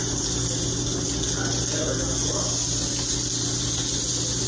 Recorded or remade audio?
recorded